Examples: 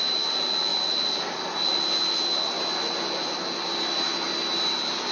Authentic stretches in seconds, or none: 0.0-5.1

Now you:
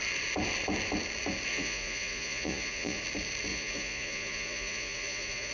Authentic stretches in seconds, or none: 0.0-1.5; 3.0-3.5

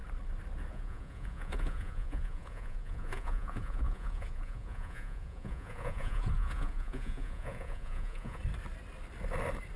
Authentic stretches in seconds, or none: 0.0-0.7; 8.4-9.8

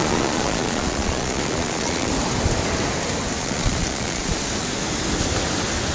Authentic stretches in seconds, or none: 2.1-3.4; 4.4-5.9

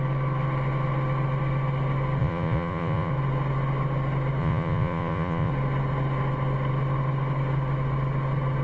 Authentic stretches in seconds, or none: 0.0-2.2; 3.1-4.4; 5.5-8.6

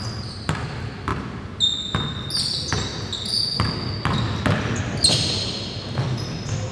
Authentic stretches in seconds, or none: 0.0-6.7

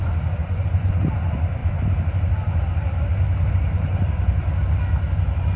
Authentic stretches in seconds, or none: 0.0-0.4; 1.0-5.6